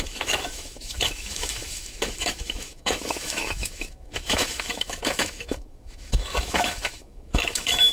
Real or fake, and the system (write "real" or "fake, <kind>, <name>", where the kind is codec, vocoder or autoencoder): fake, autoencoder, DAC-VAE